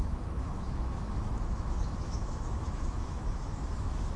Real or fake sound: fake